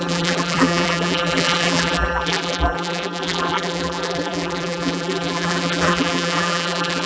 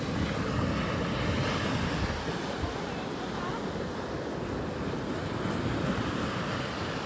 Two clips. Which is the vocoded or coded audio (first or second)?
first